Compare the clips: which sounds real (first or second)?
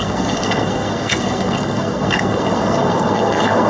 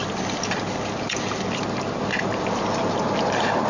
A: second